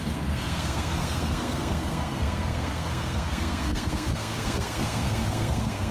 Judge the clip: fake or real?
fake